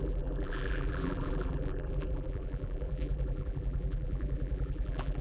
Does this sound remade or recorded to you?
remade